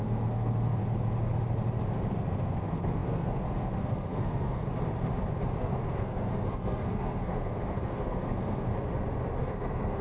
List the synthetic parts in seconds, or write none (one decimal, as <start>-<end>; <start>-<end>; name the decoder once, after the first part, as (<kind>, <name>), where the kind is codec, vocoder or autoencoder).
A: 0.0-0.8 (codec, SNAC); 2.1-4.6; 5.6-8.7; 9.4-10.0